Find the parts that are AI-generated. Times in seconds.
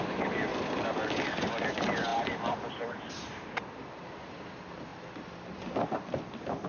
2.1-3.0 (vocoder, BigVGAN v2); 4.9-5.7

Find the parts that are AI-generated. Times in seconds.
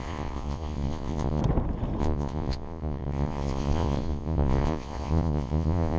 0.0-1.4 (vocoder, Vocos); 2.0-6.0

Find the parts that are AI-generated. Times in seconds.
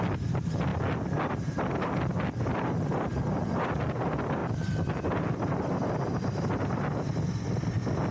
none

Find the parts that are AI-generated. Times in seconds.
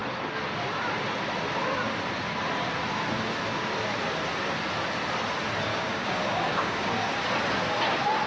5.7-7.1 (codec, DAC)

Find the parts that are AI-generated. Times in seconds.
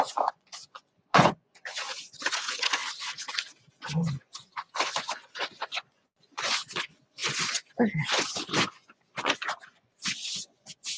0.0-2.8 (vocoder, Vocos); 3.7-11.0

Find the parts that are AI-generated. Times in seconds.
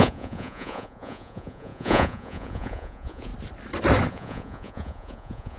0.0-3.3 (vocoder, Vocos); 4.1-5.6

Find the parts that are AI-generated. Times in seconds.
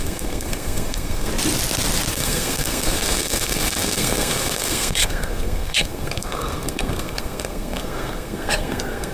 0.0-1.3 (codec, SNAC); 2.1-9.1